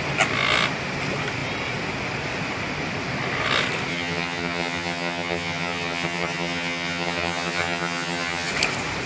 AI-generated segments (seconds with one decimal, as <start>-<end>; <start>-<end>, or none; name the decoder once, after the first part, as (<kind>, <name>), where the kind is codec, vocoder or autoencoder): 3.9-8.5 (vocoder, HiFi-GAN)